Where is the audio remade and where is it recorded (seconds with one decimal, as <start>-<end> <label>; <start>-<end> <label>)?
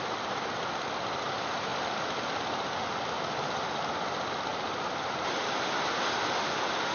0.0-4.5 recorded; 4.5-6.0 remade; 6.0-6.9 recorded